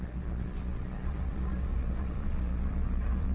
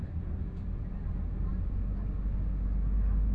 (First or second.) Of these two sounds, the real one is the second